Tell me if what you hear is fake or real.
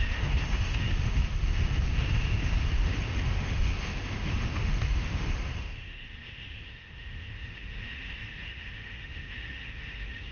fake